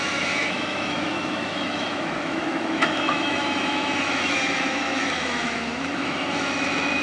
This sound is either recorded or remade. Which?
remade